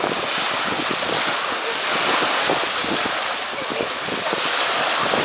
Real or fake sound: real